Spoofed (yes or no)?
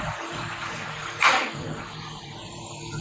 yes